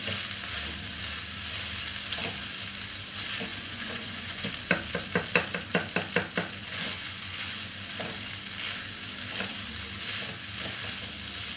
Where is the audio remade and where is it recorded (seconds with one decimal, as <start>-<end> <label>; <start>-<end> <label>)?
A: 0.0-3.5 recorded; 3.5-4.5 remade; 4.5-6.6 recorded; 6.6-7.7 remade; 7.7-11.6 recorded